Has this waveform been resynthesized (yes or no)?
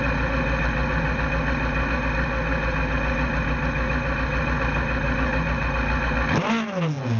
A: no